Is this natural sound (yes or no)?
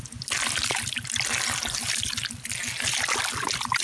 yes